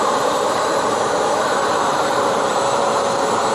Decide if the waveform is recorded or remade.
remade